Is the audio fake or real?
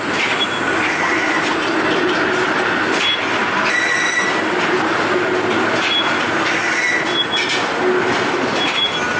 real